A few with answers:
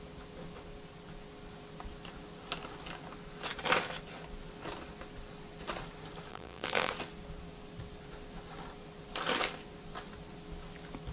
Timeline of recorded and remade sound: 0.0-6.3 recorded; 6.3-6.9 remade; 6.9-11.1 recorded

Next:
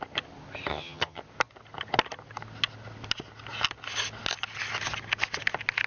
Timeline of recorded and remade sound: 0.0-0.7 recorded; 0.7-1.2 remade; 1.2-5.9 recorded

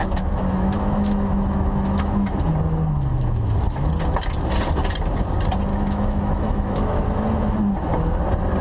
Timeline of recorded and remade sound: 0.0-2.5 remade; 2.5-3.1 recorded; 3.1-3.9 remade; 3.9-5.7 recorded; 5.7-7.5 remade; 7.5-8.6 recorded

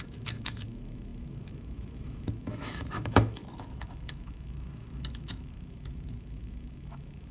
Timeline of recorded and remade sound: 0.0-7.3 remade

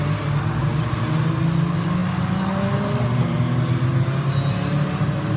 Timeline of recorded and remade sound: 0.0-5.4 recorded

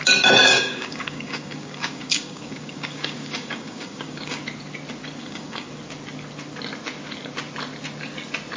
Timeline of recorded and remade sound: 0.0-0.4 recorded; 0.4-4.4 remade; 4.4-5.2 recorded; 5.2-5.7 remade; 5.7-8.6 recorded

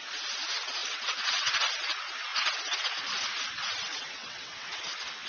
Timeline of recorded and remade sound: 0.0-0.8 recorded; 0.8-1.5 remade; 1.5-3.9 recorded; 3.9-4.8 remade; 4.8-5.3 recorded